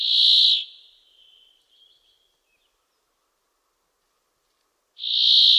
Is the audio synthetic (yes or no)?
no